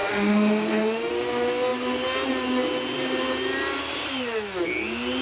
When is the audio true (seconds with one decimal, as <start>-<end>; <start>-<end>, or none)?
1.1-5.2